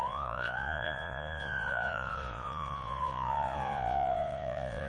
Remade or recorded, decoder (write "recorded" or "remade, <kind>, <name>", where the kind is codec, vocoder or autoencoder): remade, vocoder, Vocos